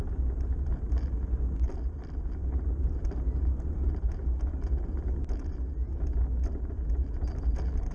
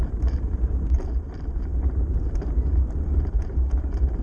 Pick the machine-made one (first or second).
second